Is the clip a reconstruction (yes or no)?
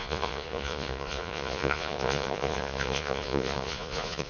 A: yes